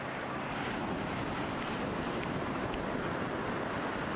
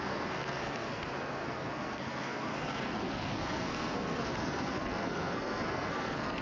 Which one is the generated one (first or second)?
second